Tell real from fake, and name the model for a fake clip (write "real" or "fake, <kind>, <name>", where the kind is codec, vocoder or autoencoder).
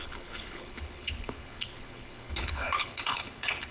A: fake, codec, HILCodec